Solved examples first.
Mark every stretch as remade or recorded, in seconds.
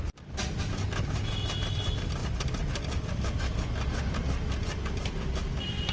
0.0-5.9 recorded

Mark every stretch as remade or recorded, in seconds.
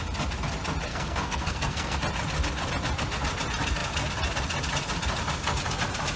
0.0-0.9 recorded; 0.9-2.0 remade; 2.0-6.2 recorded